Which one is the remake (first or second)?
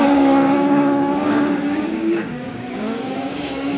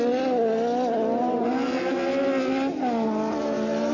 first